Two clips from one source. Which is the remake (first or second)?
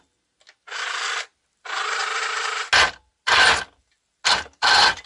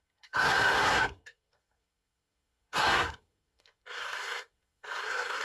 second